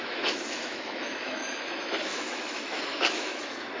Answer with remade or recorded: remade